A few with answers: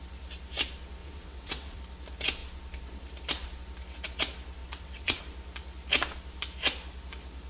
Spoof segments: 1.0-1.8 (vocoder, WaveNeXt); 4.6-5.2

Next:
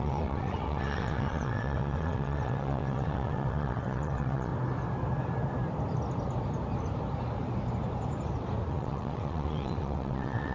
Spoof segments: 0.0-4.5 (vocoder, WaveNeXt); 8.7-10.5

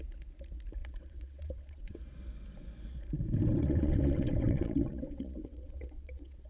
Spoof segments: 0.8-2.0 (vocoder, WaveNeXt); 3.6-6.5

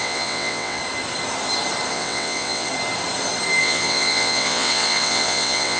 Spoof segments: 0.0-0.8 (vocoder, WaveNeXt); 1.9-2.7; 3.6-5.8

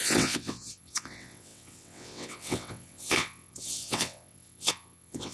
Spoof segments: 0.0-5.3 (vocoder, WaveNeXt)